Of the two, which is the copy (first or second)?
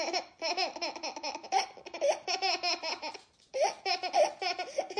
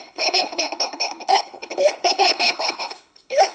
second